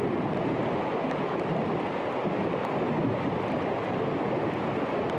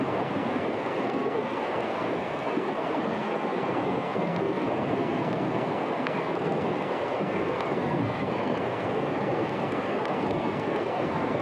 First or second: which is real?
first